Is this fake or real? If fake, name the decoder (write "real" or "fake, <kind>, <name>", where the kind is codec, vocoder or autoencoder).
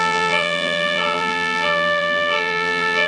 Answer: fake, vocoder, BigVGAN v2